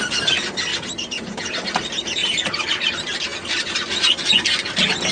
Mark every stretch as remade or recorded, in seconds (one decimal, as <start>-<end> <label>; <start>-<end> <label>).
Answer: 0.0-0.7 recorded; 0.7-1.4 remade; 1.4-2.2 recorded; 2.2-2.9 remade; 2.9-5.1 recorded